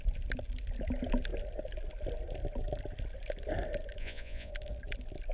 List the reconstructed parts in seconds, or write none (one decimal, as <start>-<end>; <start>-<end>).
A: 4.0-4.5

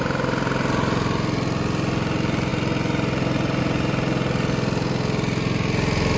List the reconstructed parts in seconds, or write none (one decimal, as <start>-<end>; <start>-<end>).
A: none

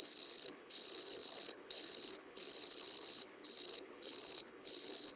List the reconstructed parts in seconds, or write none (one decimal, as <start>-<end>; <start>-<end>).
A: 0.0-5.2

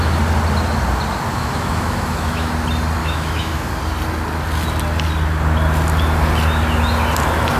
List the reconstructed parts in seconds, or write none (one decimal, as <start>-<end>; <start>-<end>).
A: 1.3-2.5; 3.0-3.7

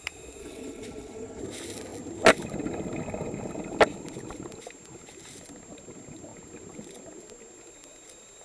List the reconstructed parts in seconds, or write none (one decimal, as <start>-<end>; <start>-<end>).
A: 0.4-1.4

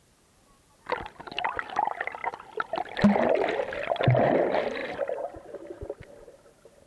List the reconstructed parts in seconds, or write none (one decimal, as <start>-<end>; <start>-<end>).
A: none